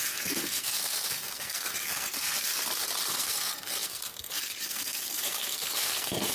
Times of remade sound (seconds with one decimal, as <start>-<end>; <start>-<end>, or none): 0.0-2.5; 3.1-6.3